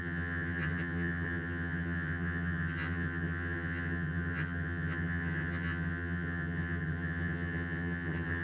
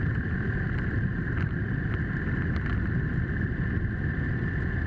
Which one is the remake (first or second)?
first